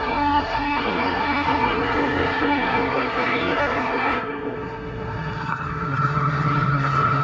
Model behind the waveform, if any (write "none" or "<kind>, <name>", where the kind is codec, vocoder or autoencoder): codec, SNAC